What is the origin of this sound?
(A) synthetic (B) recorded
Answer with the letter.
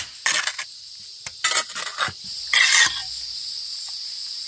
B